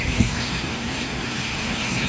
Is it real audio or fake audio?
fake